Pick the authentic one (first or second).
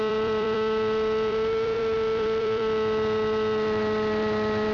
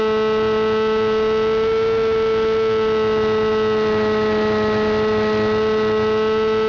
second